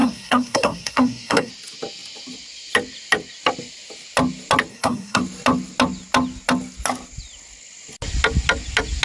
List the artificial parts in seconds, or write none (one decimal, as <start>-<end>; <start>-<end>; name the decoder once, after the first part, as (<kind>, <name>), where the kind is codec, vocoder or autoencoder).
0.0-1.5 (codec, SNAC); 4.7-5.2